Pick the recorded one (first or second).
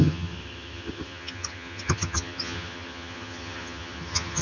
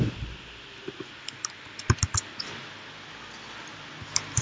second